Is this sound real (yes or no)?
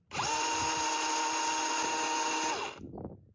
yes